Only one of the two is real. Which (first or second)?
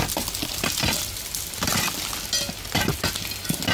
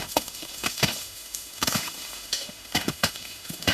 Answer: first